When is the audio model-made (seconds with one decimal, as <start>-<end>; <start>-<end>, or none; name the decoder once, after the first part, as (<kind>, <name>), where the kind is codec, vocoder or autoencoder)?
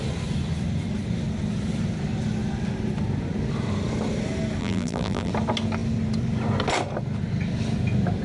4.6-5.3 (vocoder, BigVGAN v2)